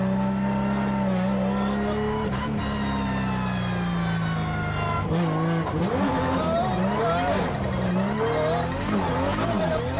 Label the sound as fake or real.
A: real